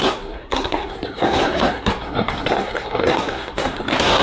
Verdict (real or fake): fake